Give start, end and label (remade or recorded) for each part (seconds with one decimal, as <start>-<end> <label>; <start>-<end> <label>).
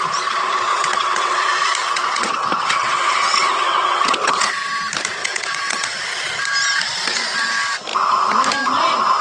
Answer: 0.0-0.7 recorded; 0.7-1.4 remade; 1.4-1.8 recorded; 1.8-4.7 remade; 4.7-5.2 recorded; 5.2-6.1 remade; 6.1-9.2 recorded